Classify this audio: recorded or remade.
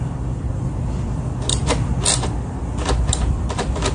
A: remade